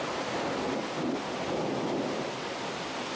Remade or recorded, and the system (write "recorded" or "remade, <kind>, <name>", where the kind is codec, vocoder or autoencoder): recorded